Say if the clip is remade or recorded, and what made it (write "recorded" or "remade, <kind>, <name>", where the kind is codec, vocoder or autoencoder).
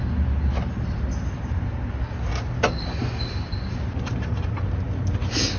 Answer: recorded